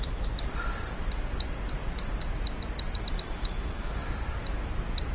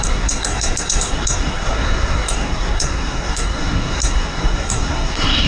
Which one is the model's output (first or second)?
second